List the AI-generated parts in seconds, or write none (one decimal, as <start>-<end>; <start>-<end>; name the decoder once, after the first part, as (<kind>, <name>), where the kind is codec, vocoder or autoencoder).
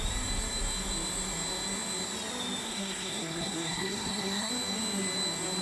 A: 2.6-4.5 (codec, SNAC)